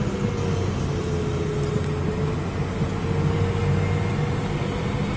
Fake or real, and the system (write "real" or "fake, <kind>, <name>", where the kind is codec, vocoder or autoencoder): real